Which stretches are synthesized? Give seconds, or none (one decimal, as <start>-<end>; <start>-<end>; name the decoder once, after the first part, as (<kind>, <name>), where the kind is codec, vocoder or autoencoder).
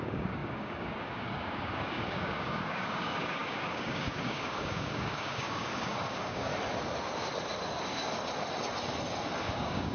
0.0-6.5 (codec, DAC); 9.4-9.9